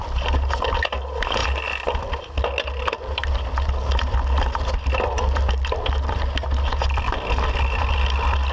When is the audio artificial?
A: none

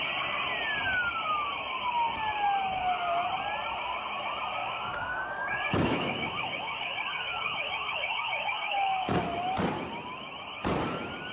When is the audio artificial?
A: 4.6-9.2

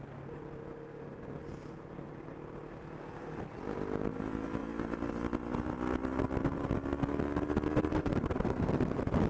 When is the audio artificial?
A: 7.9-8.7